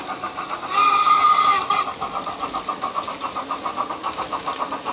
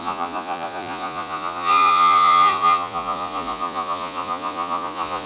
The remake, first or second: second